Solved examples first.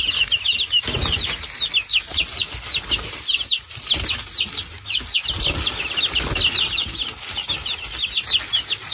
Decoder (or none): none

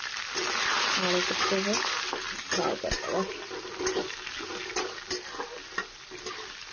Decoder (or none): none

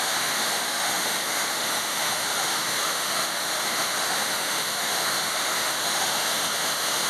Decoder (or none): autoencoder, DAC-VAE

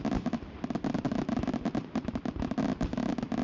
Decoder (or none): none